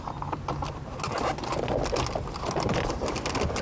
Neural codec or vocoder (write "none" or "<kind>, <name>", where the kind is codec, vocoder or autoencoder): none